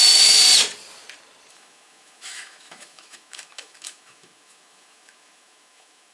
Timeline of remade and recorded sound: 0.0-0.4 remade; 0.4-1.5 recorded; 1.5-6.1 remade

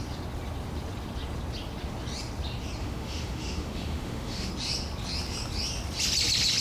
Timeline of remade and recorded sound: 0.0-2.8 recorded; 2.8-4.5 remade; 4.5-6.6 recorded

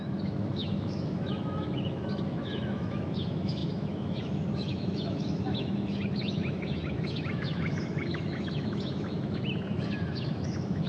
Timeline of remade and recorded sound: 0.0-10.9 remade

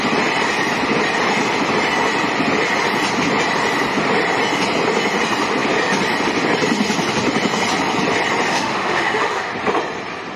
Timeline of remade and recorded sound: 0.0-8.5 recorded; 8.5-9.5 remade; 9.5-10.4 recorded

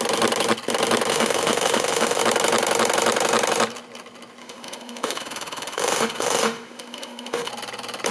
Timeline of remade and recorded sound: 0.0-1.1 recorded; 1.1-2.2 remade; 2.2-4.4 recorded; 4.4-7.5 remade; 7.5-8.1 recorded

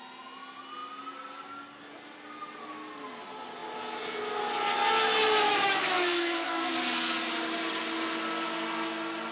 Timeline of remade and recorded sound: 0.0-5.5 recorded; 5.5-6.7 remade; 6.7-9.3 recorded

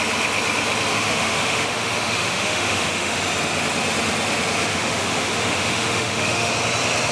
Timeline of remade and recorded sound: 0.0-0.9 recorded; 0.9-3.2 remade; 3.2-4.7 recorded; 4.7-6.5 remade; 6.5-7.1 recorded